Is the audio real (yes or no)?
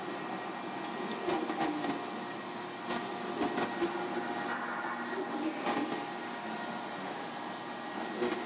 yes